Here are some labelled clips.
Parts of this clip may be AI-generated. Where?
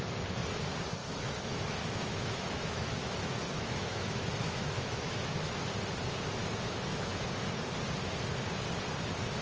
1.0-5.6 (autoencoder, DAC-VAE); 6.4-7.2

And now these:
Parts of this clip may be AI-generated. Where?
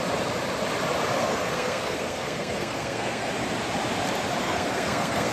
1.2-3.3 (codec, SNAC); 4.4-5.3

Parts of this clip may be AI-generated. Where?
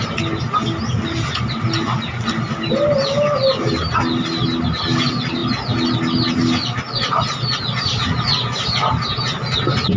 none